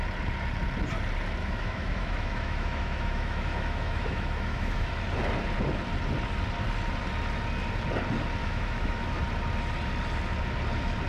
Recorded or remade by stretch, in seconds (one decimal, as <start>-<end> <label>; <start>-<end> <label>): 0.0-1.4 recorded; 1.4-4.9 remade; 4.9-8.4 recorded; 8.4-9.1 remade; 9.1-11.1 recorded

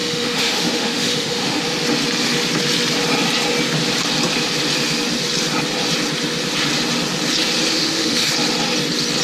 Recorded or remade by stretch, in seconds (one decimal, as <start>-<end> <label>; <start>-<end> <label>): 0.0-1.6 remade; 1.6-7.7 recorded; 7.7-8.3 remade; 8.3-9.2 recorded

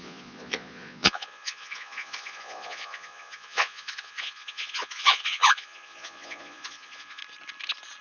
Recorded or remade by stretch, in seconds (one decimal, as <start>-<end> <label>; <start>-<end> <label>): 0.0-7.2 remade; 7.2-8.0 recorded

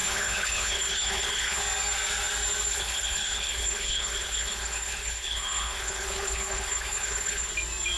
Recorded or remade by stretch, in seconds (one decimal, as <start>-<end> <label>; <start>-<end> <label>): 0.0-1.6 remade; 1.6-2.7 recorded; 2.7-7.5 remade; 7.5-8.0 recorded